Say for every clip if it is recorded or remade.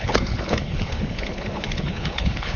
remade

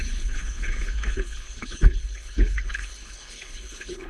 remade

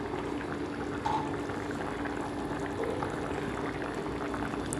recorded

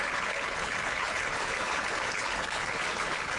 remade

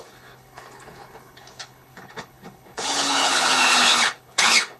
remade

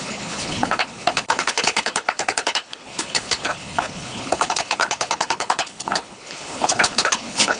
remade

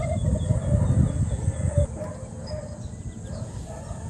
recorded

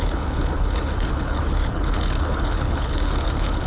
remade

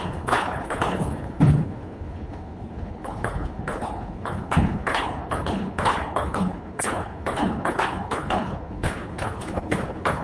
remade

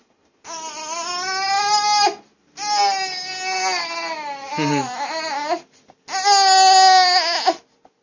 recorded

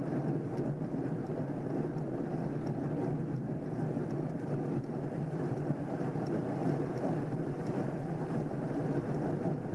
recorded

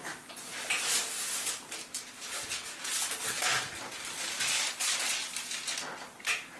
recorded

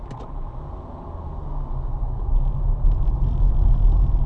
recorded